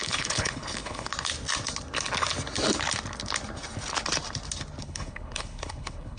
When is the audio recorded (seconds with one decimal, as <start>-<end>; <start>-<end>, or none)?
1.1-4.8